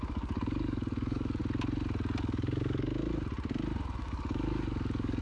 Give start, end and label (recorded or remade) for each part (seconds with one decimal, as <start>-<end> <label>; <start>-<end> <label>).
0.0-1.4 remade; 1.4-2.2 recorded; 2.2-2.9 remade; 2.9-4.0 recorded; 4.0-5.2 remade